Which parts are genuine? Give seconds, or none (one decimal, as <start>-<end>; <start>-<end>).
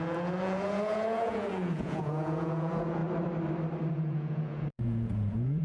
3.0-3.9